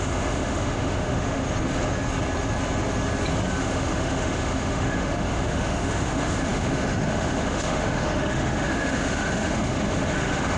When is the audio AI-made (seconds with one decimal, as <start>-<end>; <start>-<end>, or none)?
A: 0.0-1.4; 3.6-10.6